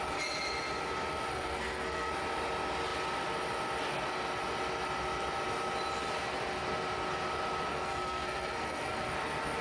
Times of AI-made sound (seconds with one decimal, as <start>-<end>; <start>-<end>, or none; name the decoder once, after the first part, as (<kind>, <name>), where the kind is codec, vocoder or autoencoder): 1.3-2.1 (codec, SNAC); 7.7-9.1